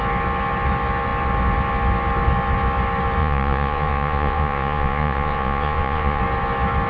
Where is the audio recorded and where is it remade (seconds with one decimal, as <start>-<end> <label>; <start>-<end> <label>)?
0.0-3.2 recorded; 3.2-6.2 remade; 6.2-6.9 recorded

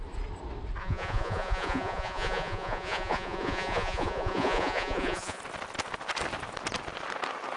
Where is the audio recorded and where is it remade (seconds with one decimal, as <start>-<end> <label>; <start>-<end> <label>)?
0.0-0.8 recorded; 0.8-5.4 remade; 5.4-7.6 recorded

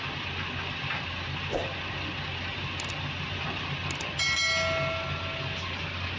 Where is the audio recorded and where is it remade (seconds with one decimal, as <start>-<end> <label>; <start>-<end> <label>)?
0.0-6.2 recorded

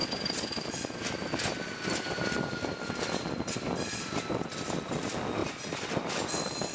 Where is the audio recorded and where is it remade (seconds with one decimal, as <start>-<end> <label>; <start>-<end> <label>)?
0.0-6.7 recorded